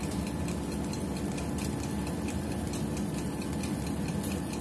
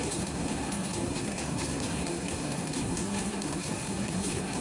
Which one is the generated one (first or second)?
second